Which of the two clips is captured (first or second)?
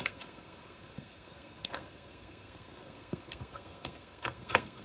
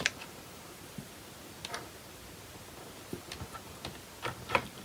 second